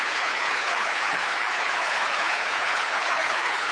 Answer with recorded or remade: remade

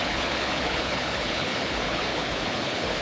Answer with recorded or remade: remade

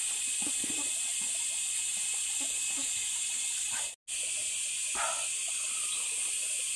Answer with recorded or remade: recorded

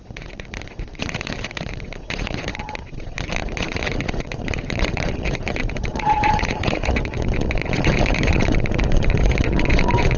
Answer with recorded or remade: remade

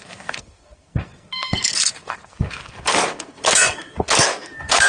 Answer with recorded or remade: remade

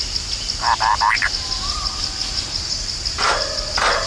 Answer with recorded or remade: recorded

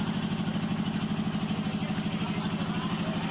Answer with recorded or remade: recorded